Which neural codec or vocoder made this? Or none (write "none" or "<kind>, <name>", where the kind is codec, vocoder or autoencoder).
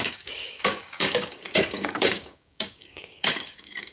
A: codec, DAC